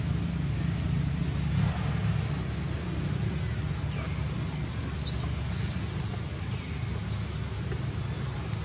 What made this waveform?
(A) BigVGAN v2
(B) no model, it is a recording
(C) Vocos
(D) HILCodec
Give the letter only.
B